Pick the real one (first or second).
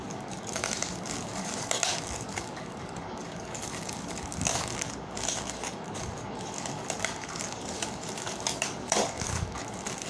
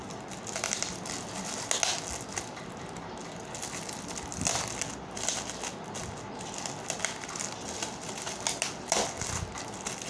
second